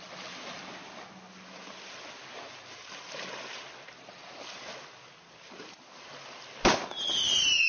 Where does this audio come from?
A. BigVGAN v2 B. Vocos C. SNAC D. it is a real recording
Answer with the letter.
D